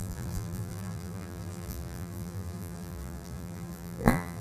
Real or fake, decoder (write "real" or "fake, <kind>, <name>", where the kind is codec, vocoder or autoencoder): fake, vocoder, BigVGAN v2